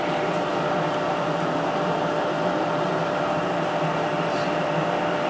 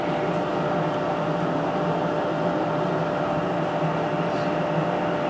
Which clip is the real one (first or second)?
second